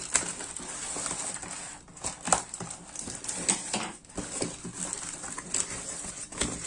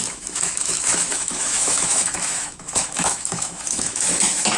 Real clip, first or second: first